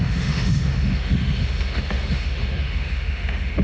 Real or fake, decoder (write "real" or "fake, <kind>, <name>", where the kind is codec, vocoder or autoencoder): fake, autoencoder, DAC-VAE